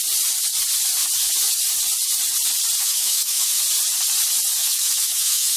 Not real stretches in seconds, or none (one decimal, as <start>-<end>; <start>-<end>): 2.8-3.6; 4.6-5.6